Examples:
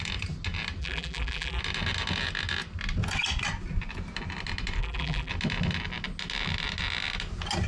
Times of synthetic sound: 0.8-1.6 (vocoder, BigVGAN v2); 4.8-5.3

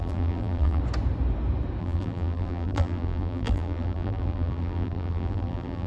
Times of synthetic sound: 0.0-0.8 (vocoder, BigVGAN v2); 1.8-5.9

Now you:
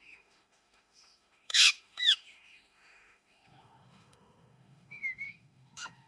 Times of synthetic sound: 0.0-6.1 (autoencoder, DAC-VAE)